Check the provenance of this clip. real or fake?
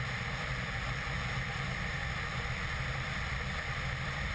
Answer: fake